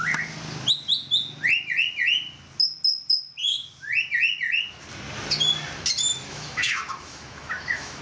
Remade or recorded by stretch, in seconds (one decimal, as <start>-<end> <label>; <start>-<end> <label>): 0.0-6.1 recorded; 6.1-8.0 remade